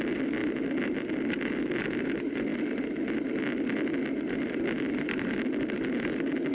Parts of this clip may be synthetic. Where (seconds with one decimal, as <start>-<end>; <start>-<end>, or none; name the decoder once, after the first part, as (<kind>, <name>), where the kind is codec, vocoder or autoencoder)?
none